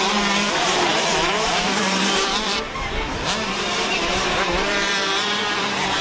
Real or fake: fake